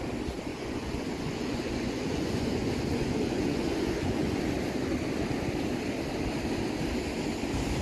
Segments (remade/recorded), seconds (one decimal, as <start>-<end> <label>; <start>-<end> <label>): 0.0-0.5 recorded; 0.5-4.4 remade; 4.4-7.8 recorded